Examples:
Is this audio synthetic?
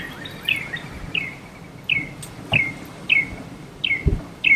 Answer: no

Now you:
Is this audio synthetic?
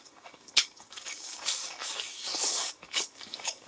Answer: yes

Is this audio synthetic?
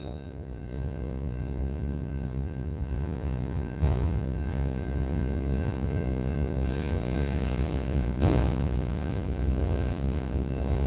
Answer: yes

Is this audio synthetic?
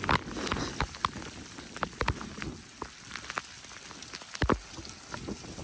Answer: no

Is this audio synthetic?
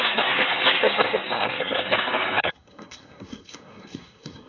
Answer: yes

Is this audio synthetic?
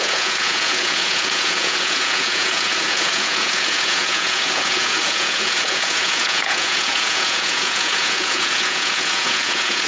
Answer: yes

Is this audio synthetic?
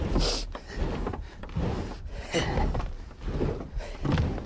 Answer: no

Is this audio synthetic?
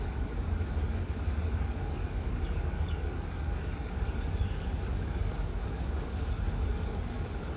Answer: yes